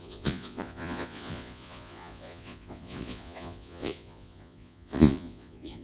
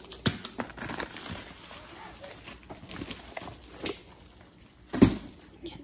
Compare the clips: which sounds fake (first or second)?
first